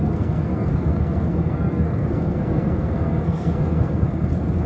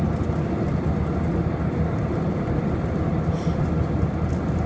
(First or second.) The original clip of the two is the second